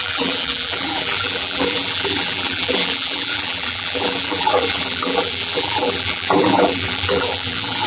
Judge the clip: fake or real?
fake